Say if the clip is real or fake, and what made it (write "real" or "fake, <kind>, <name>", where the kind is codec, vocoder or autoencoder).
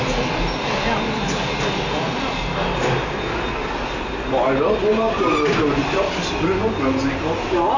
real